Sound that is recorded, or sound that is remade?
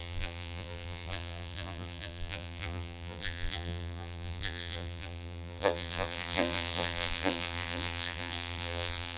remade